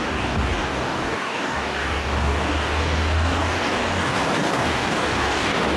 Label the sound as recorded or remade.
remade